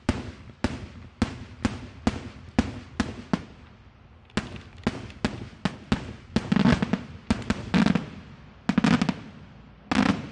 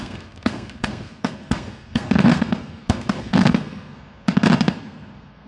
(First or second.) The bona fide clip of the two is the first